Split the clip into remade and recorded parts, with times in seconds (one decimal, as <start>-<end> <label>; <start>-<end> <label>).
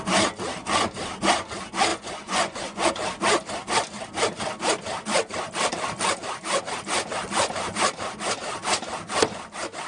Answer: 0.0-1.9 recorded; 1.9-2.9 remade; 2.9-9.9 recorded